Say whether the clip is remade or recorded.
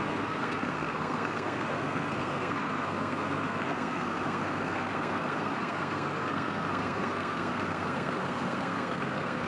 remade